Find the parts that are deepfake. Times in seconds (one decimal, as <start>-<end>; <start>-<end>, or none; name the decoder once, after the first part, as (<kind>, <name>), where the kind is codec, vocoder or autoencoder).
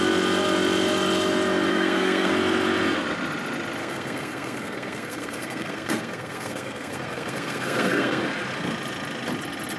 1.7-2.3 (codec, SNAC); 3.8-8.2